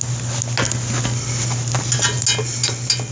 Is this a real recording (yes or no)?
yes